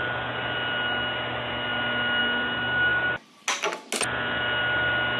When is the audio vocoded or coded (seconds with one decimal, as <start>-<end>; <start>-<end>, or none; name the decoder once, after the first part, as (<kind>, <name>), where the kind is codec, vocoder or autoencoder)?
none